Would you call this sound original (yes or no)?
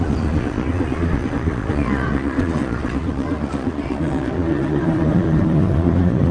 no